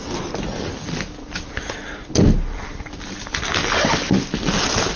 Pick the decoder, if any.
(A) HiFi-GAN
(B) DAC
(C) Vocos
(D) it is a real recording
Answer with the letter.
D